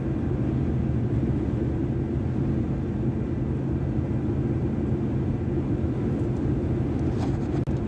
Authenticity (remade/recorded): recorded